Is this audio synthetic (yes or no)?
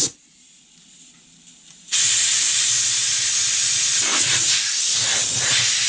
no